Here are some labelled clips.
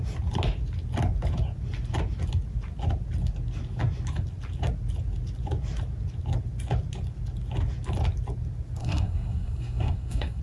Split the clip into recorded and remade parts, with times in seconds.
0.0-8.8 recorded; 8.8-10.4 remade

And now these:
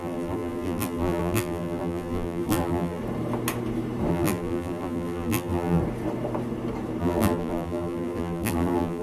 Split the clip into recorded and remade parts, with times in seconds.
0.0-3.0 remade; 3.0-4.1 recorded; 4.1-5.8 remade; 5.8-7.0 recorded; 7.0-9.0 remade